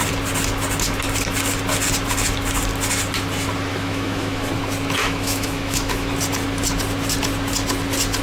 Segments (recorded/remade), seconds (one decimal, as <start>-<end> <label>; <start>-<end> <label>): 0.0-3.7 recorded; 3.7-4.5 remade; 4.5-5.0 recorded; 5.0-6.1 remade; 6.1-8.2 recorded